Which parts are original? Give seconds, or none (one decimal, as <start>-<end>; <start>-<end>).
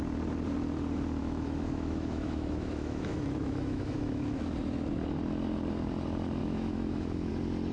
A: 0.0-1.2; 4.5-6.4; 7.3-7.7